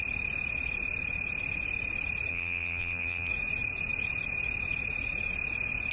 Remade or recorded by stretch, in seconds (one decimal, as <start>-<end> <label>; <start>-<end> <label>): 0.0-2.3 recorded; 2.3-3.3 remade; 3.3-5.9 recorded